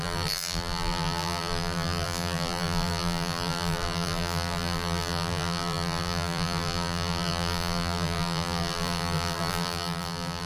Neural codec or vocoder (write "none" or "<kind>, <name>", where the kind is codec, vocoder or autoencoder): vocoder, BigVGAN v2